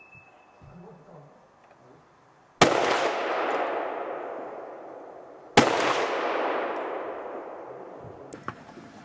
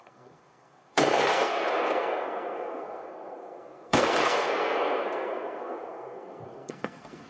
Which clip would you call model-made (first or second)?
second